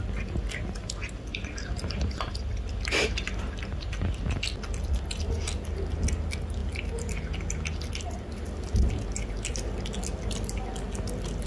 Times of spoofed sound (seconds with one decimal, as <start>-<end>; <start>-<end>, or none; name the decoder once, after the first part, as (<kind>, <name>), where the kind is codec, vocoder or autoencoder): 1.3-4.2 (vocoder, BigVGAN v2)